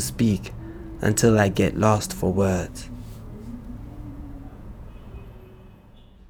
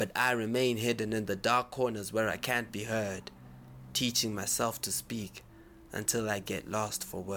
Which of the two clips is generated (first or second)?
first